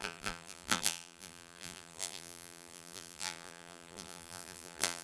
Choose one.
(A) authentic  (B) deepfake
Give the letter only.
B